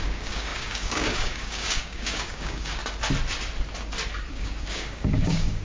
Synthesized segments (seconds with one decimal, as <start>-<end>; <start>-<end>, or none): 0.0-2.8; 4.3-5.6